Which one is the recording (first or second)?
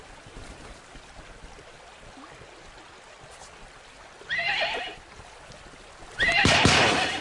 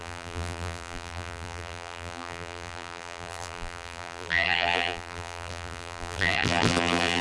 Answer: first